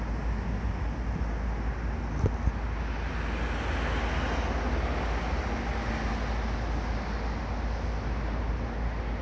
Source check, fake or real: real